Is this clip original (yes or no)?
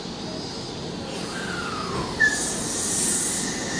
yes